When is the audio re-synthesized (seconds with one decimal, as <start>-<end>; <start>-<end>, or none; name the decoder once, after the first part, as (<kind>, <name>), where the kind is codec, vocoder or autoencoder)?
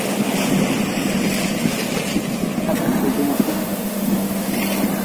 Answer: 3.1-4.5 (autoencoder, DAC-VAE)